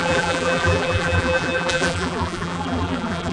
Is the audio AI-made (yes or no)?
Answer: yes